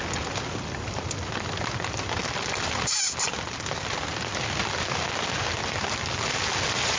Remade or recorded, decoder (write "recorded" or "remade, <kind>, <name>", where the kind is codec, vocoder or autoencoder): recorded